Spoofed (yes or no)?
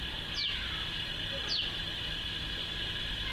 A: no